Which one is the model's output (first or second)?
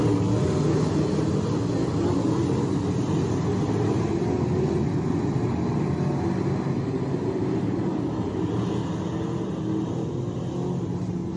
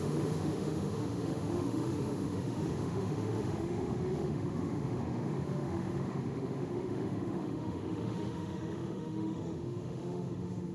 second